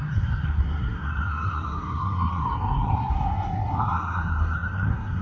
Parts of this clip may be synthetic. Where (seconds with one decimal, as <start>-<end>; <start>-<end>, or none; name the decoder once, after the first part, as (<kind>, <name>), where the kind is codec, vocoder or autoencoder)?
0.0-5.2 (codec, SNAC)